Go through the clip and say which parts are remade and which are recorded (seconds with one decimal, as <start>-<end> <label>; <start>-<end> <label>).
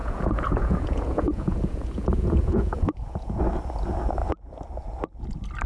0.0-3.4 remade; 3.4-5.7 recorded